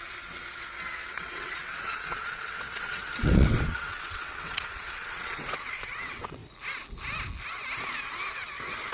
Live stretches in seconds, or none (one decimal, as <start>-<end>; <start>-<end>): 6.4-8.3